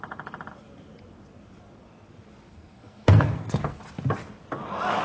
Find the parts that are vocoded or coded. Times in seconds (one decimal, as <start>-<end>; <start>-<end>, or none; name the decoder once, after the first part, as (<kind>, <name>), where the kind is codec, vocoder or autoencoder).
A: 2.5-3.8 (codec, SNAC)